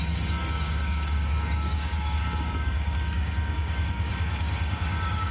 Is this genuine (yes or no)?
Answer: no